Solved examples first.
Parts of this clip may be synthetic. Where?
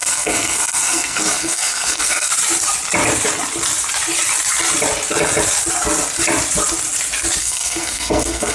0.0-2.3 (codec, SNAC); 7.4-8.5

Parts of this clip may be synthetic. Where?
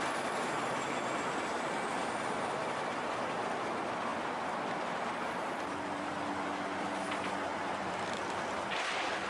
4.1-6.1 (vocoder, BigVGAN v2)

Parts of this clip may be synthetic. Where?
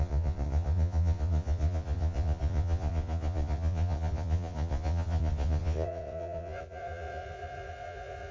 0.0-8.3 (vocoder, Vocos)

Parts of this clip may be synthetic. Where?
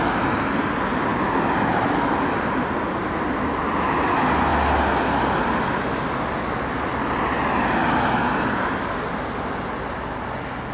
none